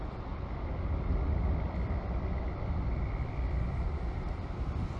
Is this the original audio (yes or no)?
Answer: yes